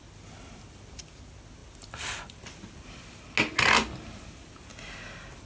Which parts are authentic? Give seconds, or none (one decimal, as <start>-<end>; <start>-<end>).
0.0-5.5